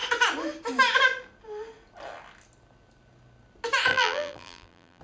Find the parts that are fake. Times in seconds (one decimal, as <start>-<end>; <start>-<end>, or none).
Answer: 3.9-5.0